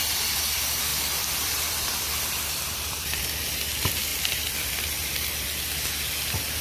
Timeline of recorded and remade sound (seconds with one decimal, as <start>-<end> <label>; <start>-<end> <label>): 0.0-0.9 recorded; 0.9-3.2 remade; 3.2-4.1 recorded; 4.1-5.1 remade; 5.1-6.6 recorded

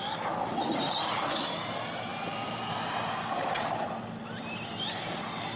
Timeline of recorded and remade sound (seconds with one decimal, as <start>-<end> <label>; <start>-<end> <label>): 0.0-5.6 recorded

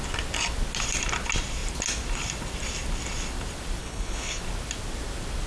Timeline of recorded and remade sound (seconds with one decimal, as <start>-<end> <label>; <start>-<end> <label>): 0.0-3.8 recorded; 3.8-4.4 remade; 4.4-5.5 recorded

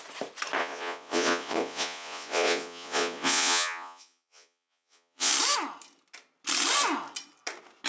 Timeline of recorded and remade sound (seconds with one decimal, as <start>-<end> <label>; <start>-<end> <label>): 0.0-0.6 recorded; 0.6-5.3 remade; 5.3-7.9 recorded